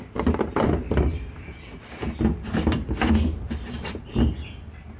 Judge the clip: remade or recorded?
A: recorded